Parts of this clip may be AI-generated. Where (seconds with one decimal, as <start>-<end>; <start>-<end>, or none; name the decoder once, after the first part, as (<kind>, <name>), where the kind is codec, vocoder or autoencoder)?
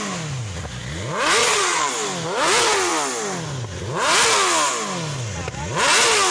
1.4-1.9 (vocoder, Vocos)